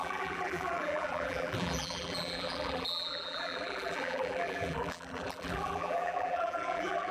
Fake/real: fake